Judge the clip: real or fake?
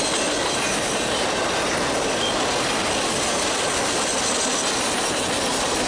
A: real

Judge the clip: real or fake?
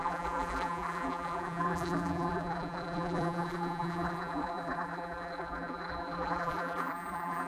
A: fake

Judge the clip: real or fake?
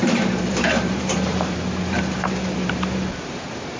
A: fake